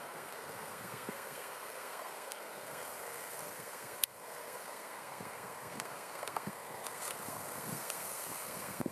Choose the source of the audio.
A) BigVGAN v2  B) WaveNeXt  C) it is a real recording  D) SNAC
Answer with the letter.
D